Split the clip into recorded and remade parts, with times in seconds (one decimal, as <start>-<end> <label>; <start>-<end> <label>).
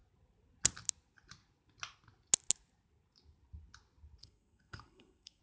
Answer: 0.0-4.2 recorded; 4.2-5.4 remade